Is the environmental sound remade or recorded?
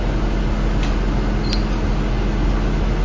recorded